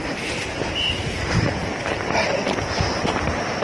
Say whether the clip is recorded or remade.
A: recorded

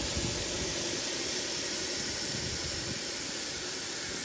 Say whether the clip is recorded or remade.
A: recorded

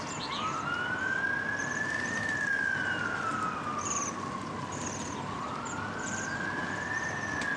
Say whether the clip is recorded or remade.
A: recorded